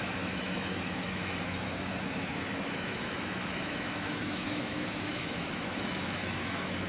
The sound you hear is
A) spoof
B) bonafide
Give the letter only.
A